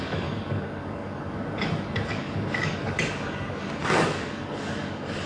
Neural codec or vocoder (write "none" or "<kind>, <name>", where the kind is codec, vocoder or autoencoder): codec, DAC